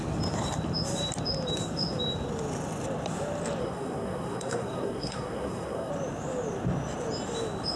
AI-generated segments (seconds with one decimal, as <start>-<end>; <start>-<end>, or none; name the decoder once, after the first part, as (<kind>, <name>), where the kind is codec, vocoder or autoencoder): 3.6-5.9 (codec, SNAC)

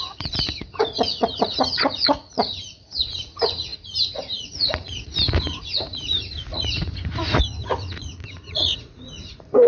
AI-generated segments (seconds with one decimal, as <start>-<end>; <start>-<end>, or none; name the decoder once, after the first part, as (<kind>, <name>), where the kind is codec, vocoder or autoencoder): 0.0-9.7 (vocoder, Vocos)

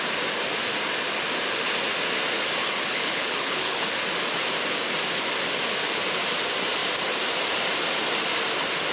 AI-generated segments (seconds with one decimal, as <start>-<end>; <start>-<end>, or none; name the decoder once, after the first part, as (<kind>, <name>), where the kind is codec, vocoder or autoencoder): 2.6-3.9 (codec, HILCodec)

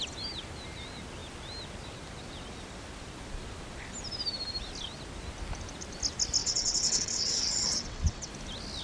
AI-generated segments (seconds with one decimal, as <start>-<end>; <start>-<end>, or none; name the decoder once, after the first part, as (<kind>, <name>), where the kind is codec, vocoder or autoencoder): 6.4-8.3 (vocoder, WaveNeXt)

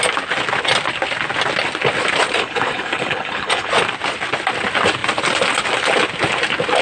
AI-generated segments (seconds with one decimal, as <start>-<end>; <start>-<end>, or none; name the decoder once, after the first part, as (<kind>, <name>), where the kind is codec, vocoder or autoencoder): 2.4-3.7 (codec, HILCodec)

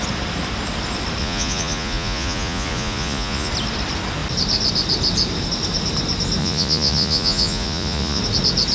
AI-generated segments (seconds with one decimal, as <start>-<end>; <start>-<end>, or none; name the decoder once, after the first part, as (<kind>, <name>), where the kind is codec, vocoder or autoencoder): 1.2-3.5 (vocoder, Vocos); 6.4-8.2